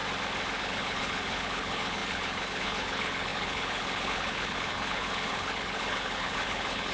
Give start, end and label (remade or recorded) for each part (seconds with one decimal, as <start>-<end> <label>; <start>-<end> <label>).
0.0-0.6 recorded; 0.6-6.9 remade